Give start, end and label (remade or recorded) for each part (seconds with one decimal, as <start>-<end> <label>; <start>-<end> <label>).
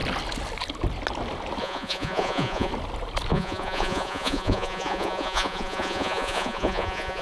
0.0-1.6 recorded; 1.6-2.7 remade; 2.7-3.3 recorded; 3.3-7.2 remade